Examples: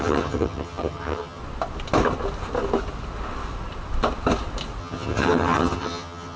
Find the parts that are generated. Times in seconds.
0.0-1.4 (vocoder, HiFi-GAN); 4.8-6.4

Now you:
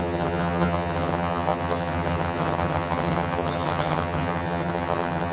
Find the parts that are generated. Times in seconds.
0.0-5.3 (vocoder, HiFi-GAN)

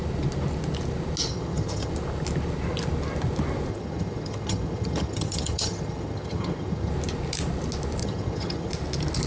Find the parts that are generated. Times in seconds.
1.3-1.9 (vocoder, HiFi-GAN); 3.7-6.9; 8.0-8.7

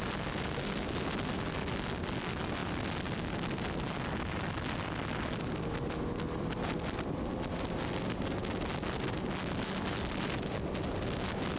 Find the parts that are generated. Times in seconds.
none